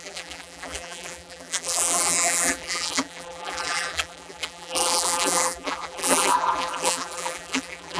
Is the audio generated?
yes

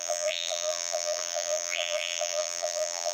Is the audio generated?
yes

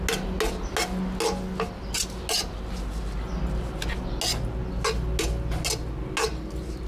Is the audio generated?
no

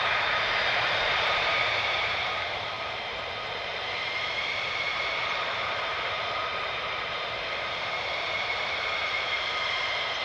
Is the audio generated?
yes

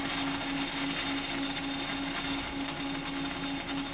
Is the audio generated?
no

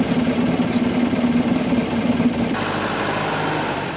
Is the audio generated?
no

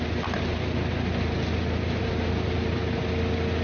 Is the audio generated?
no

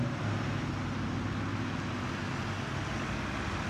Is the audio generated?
no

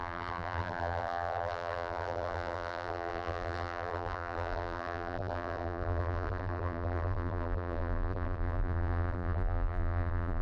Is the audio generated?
yes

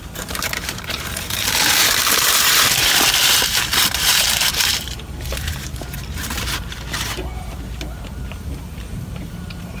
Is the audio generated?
yes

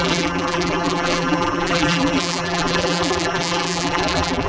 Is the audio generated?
yes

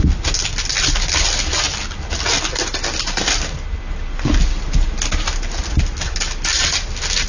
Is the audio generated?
no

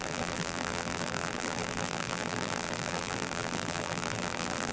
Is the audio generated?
yes